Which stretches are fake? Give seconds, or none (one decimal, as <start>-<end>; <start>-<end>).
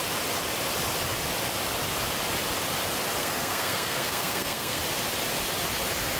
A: 3.2-4.8